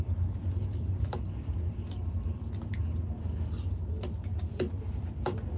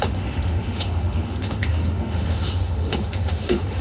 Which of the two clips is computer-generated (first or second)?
second